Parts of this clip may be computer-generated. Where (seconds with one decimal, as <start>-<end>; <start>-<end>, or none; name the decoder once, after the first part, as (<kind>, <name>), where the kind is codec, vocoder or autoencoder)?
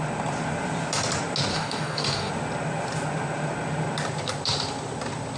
1.5-2.3 (codec, DAC)